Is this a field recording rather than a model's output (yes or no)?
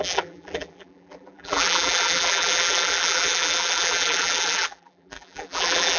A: no